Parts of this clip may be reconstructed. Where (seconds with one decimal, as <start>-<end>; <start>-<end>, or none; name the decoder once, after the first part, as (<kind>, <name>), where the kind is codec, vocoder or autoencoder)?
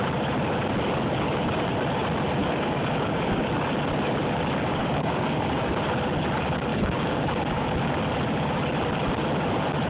2.4-3.5 (codec, DAC); 4.8-5.7; 6.7-8.0